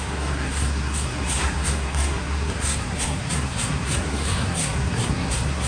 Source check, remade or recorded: remade